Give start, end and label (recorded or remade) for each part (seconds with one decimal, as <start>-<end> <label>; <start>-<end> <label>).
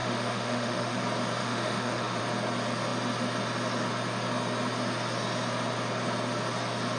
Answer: 0.0-1.0 remade; 1.0-1.4 recorded; 1.4-2.2 remade; 2.2-7.0 recorded